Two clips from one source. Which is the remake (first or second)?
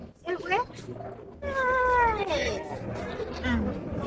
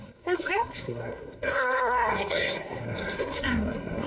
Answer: second